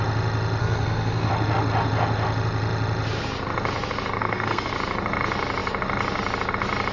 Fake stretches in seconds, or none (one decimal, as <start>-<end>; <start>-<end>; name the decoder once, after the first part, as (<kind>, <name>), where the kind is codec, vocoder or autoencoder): 0.6-1.3 (codec, SNAC); 4.2-4.7